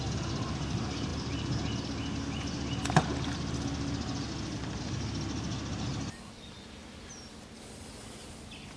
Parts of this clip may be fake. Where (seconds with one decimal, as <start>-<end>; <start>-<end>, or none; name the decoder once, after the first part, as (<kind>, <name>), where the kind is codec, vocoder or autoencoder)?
none